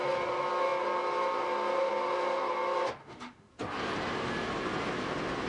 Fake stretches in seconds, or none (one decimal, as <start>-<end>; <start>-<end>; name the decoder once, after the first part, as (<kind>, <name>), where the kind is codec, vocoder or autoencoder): 3.0-3.5 (autoencoder, DAC-VAE)